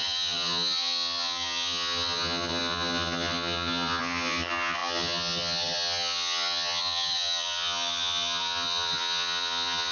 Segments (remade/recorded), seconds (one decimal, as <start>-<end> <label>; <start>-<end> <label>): 0.0-9.9 remade